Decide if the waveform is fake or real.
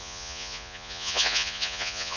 fake